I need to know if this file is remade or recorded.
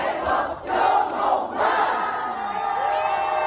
recorded